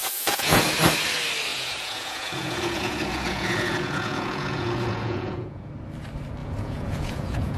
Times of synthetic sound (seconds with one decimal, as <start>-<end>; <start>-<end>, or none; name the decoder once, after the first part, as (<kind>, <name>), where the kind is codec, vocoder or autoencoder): 0.0-0.6 (vocoder, Vocos); 1.5-5.7; 6.4-7.6